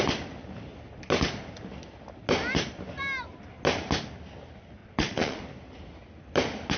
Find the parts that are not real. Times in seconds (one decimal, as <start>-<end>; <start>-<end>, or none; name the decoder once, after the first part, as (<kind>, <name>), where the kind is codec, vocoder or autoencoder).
4.8-5.4 (vocoder, Vocos)